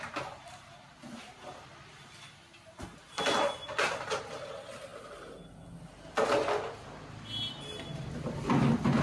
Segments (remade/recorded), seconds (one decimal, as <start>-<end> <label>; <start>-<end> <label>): 0.0-9.0 recorded